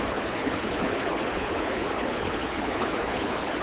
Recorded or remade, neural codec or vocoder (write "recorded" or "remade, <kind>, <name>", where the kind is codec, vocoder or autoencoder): remade, codec, HILCodec